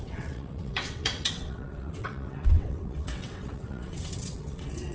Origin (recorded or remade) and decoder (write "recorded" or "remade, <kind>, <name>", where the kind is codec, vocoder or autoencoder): remade, vocoder, WaveNeXt